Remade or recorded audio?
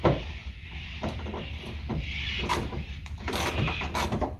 recorded